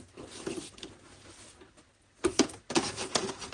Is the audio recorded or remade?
recorded